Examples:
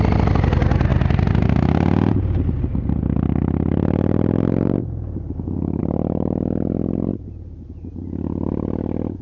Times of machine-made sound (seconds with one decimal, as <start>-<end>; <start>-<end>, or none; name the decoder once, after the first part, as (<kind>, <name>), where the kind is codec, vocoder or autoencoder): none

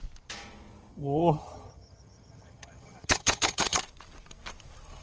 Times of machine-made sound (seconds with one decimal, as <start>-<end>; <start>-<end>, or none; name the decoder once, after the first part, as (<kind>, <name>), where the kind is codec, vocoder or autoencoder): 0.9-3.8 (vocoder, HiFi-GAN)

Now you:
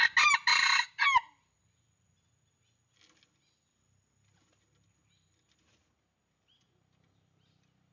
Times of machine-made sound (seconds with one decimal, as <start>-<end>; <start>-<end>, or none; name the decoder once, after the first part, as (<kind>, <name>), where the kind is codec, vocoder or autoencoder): none